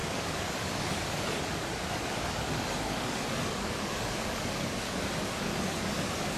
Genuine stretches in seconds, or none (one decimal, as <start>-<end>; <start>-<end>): none